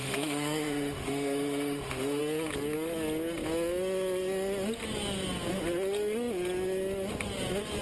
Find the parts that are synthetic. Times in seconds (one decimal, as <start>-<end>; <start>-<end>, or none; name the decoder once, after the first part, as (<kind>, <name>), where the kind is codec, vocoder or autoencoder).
0.0-2.2 (autoencoder, DAC-VAE)